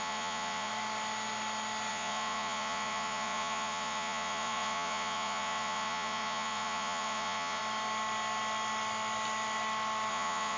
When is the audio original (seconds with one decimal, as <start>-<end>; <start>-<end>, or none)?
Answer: 0.7-1.9; 7.6-10.1

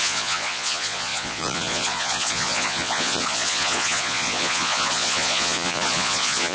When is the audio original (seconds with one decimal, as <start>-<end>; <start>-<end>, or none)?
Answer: none